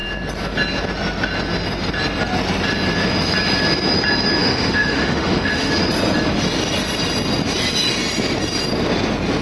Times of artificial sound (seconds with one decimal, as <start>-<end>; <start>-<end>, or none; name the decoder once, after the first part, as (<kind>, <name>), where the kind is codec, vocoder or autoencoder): 4.4-5.7 (autoencoder, DAC-VAE)